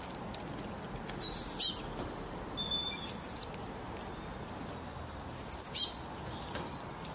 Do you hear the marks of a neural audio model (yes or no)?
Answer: no